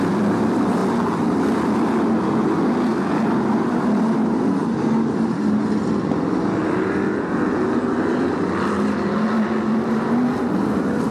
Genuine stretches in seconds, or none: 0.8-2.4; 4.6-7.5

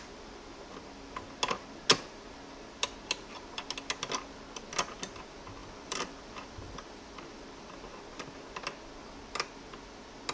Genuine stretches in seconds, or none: 0.0-5.6; 7.7-10.3

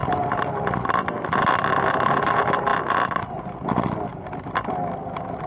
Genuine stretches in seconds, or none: 0.7-5.5

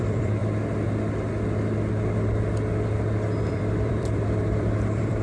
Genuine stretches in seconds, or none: 0.4-3.5